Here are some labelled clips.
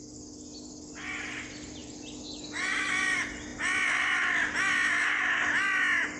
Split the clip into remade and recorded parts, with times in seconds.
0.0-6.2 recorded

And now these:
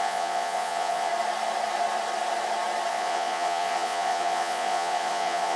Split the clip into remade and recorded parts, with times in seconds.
0.0-1.1 remade; 1.1-2.9 recorded; 2.9-5.6 remade

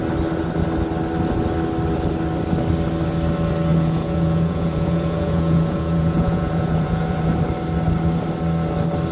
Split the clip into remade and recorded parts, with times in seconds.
0.0-3.7 recorded; 3.7-7.3 remade; 7.3-9.1 recorded

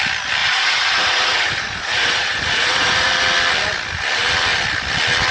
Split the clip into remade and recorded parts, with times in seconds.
0.0-0.4 recorded; 0.4-3.1 remade; 3.1-5.3 recorded

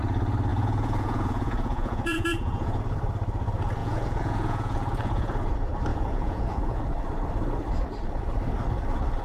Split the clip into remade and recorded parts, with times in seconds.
0.0-0.5 recorded; 0.5-2.8 remade; 2.8-3.8 recorded; 3.8-5.5 remade; 5.5-5.9 recorded; 5.9-6.8 remade; 6.8-9.2 recorded

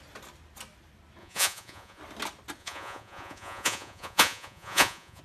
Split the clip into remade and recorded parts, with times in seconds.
0.0-1.2 recorded; 1.2-2.0 remade; 2.0-2.6 recorded; 2.6-5.2 remade